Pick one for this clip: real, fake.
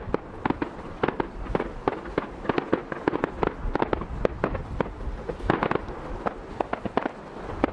real